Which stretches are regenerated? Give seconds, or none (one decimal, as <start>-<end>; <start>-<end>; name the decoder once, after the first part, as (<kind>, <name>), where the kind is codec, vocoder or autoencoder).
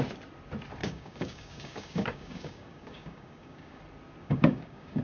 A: 0.8-3.8 (codec, DAC); 4.2-5.0